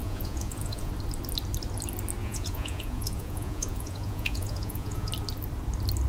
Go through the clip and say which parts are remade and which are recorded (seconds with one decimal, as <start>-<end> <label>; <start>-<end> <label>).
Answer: 0.0-0.9 remade; 0.9-2.2 recorded; 2.2-5.1 remade; 5.1-6.1 recorded